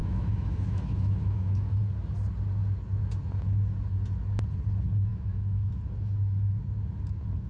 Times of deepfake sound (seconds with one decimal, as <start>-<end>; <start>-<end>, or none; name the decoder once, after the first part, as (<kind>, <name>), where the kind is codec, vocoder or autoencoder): 0.0-1.8 (autoencoder, DAC-VAE); 5.1-5.7